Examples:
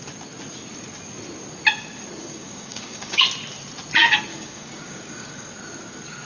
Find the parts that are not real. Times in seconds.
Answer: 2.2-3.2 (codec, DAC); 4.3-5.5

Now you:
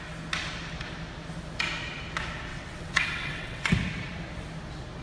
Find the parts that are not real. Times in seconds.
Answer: 2.5-3.7 (vocoder, WaveNeXt)

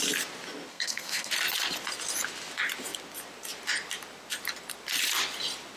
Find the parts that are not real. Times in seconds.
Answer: 0.7-1.3 (codec, SNAC)